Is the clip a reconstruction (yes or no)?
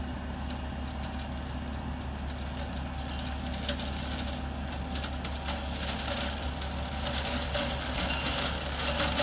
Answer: no